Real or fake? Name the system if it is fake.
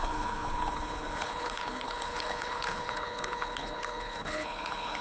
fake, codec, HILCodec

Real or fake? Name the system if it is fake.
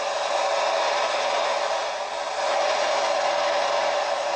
real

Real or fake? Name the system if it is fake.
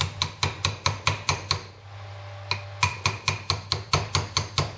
real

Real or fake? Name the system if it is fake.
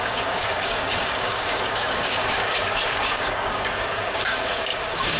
fake, codec, DAC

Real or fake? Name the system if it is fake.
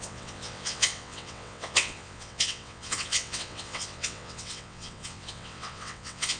fake, vocoder, WaveNeXt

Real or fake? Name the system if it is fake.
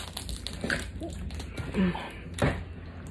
real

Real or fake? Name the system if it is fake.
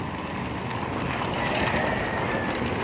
real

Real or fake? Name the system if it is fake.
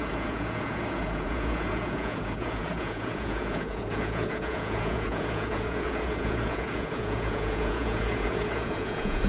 fake, vocoder, Vocos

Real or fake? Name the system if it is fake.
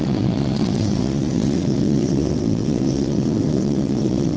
fake, vocoder, WaveNeXt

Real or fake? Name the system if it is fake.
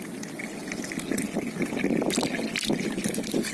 real